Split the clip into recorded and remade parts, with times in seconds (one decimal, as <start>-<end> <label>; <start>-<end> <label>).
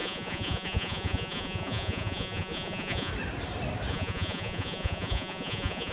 0.0-3.1 remade; 3.1-3.9 recorded; 3.9-5.9 remade